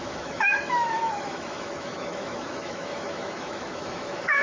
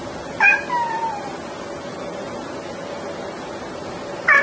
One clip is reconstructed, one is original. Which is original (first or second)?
second